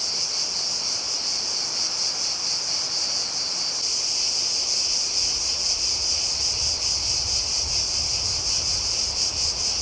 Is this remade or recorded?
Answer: recorded